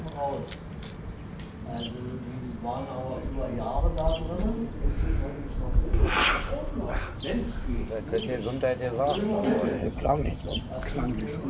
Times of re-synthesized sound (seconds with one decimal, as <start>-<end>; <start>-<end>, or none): 9.8-10.6